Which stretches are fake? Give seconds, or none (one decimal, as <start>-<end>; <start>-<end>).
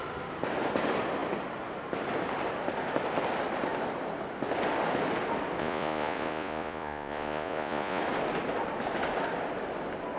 5.6-8.0